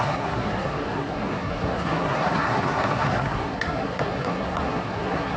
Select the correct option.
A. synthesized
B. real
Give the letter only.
A